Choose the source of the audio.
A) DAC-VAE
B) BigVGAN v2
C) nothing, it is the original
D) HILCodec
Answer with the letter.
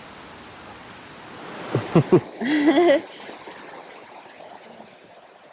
C